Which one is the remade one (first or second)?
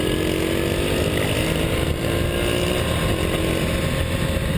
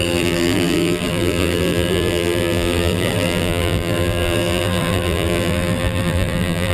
second